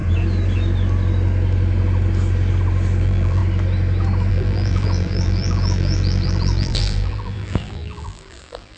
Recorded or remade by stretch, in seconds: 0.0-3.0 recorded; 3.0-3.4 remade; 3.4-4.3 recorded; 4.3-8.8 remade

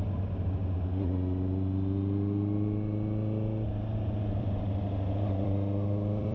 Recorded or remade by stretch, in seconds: 0.0-0.6 remade; 0.6-4.4 recorded; 4.4-6.3 remade

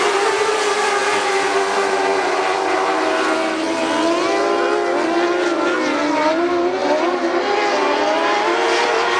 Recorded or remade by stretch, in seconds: 0.0-9.2 recorded